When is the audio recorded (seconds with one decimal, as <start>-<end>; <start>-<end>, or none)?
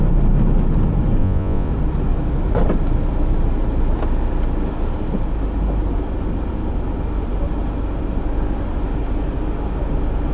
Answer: 0.0-1.2; 1.7-10.3